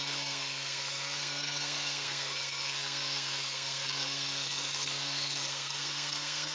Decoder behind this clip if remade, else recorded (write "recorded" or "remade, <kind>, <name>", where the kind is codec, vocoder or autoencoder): remade, codec, SNAC